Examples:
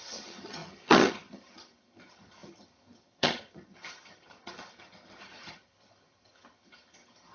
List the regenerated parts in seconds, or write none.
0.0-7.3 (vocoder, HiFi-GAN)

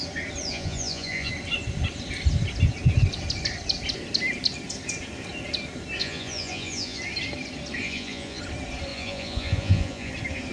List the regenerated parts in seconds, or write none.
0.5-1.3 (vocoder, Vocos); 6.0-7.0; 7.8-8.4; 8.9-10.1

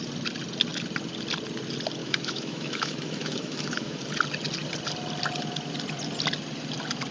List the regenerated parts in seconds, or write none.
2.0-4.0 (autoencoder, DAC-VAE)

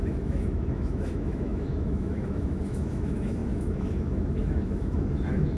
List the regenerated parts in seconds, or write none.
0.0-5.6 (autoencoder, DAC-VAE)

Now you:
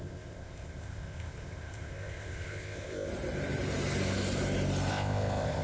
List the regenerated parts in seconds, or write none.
0.0-3.1 (codec, ZipCodec); 4.9-5.6

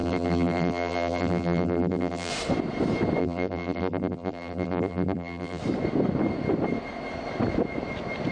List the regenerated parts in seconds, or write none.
0.0-2.3 (vocoder, BigVGAN v2); 3.2-5.6

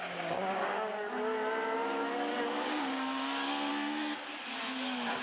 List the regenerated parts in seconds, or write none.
0.4-1.1 (codec, DAC); 2.3-3.7